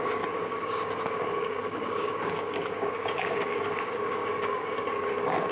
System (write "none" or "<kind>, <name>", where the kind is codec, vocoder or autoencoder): codec, DAC